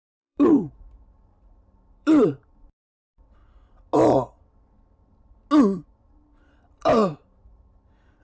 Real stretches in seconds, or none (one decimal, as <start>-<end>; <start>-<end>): 3.4-6.0